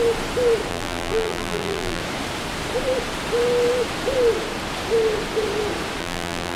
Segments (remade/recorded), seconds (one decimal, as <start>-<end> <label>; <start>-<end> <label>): 0.0-0.7 recorded; 0.7-2.0 remade; 2.0-6.0 recorded; 6.0-6.6 remade